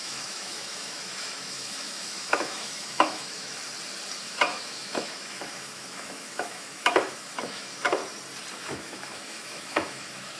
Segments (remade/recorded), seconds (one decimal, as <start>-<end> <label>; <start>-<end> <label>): 0.0-3.6 remade; 3.6-4.2 recorded; 4.2-8.0 remade; 8.0-8.5 recorded; 8.5-10.4 remade